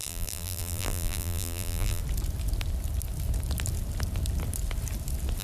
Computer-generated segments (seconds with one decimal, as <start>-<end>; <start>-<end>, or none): 0.0-2.0